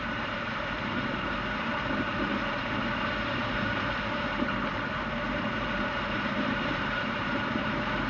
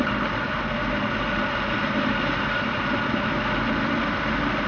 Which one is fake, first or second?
first